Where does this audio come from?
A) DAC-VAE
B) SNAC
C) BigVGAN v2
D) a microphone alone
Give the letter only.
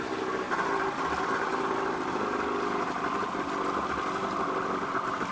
D